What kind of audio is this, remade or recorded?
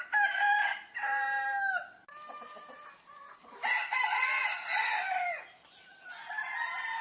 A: recorded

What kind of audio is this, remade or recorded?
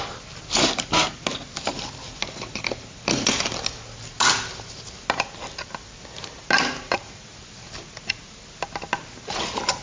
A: recorded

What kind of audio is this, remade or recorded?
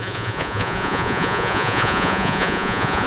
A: remade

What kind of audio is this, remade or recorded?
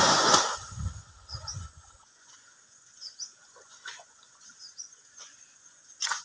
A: remade